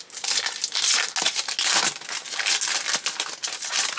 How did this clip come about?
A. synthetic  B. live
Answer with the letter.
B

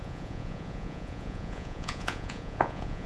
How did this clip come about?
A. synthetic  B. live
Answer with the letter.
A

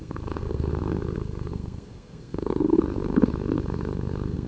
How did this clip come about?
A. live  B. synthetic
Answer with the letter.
B